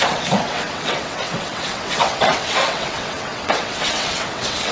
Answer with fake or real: fake